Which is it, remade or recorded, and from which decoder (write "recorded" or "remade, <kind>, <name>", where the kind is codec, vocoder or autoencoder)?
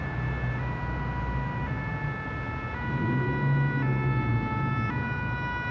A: recorded